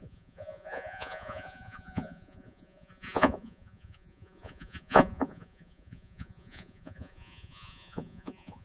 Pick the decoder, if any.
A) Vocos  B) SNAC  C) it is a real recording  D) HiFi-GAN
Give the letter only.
A